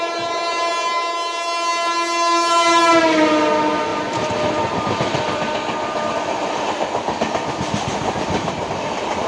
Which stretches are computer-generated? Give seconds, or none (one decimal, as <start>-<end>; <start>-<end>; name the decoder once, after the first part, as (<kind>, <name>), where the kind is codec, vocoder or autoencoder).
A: 3.9-9.3 (vocoder, BigVGAN v2)